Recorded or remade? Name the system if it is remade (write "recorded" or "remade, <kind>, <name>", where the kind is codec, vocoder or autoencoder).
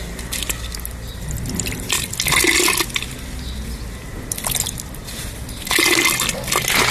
recorded